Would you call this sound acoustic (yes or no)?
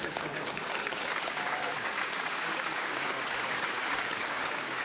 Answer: no